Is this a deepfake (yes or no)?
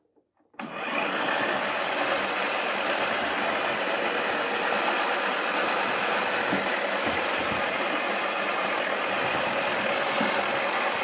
yes